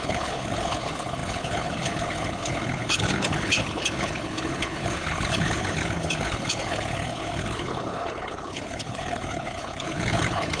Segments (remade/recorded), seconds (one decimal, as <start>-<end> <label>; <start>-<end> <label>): 0.0-10.6 remade